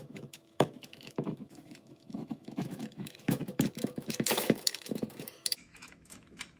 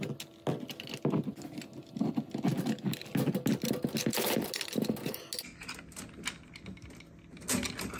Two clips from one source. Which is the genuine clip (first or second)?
second